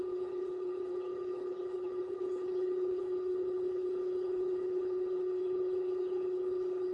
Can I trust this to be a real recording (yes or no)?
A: no